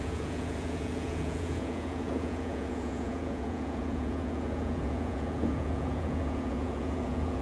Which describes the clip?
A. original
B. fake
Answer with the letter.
B